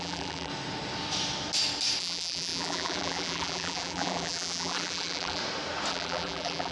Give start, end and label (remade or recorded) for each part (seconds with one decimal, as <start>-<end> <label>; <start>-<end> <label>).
0.0-0.5 remade; 0.5-2.0 recorded; 2.0-5.4 remade; 5.4-5.9 recorded; 5.9-6.7 remade